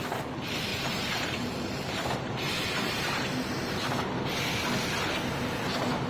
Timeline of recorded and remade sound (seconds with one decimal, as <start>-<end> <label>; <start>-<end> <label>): 0.0-0.7 recorded; 0.7-3.7 remade; 3.7-6.1 recorded